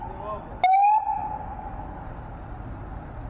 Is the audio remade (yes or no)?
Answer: no